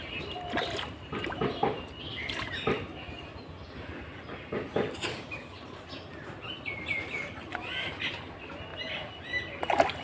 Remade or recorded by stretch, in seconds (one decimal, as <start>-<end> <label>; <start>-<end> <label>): 0.0-10.0 recorded